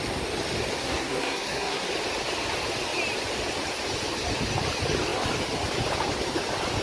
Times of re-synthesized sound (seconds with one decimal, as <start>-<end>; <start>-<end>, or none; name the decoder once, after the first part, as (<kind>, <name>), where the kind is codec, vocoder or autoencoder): 0.8-1.9 (codec, SNAC)